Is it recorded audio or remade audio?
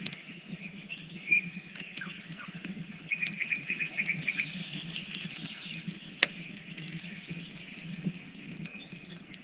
remade